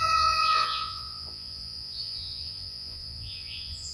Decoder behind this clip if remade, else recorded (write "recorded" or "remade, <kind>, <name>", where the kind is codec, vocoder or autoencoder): remade, vocoder, Vocos